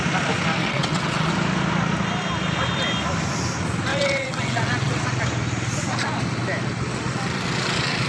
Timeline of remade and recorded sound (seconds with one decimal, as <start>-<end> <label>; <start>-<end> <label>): 0.0-0.6 recorded; 0.6-1.3 remade; 1.3-3.9 recorded; 3.9-5.0 remade; 5.0-8.1 recorded